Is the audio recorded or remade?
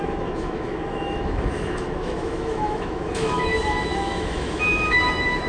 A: remade